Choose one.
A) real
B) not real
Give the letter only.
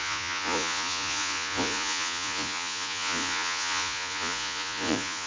B